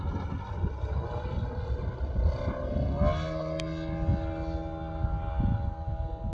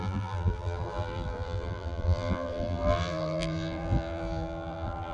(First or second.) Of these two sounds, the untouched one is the first